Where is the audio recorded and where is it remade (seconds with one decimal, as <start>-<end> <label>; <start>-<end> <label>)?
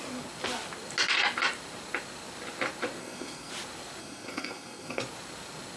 0.0-3.0 recorded; 3.0-3.5 remade; 3.5-4.0 recorded; 4.0-5.0 remade; 5.0-5.8 recorded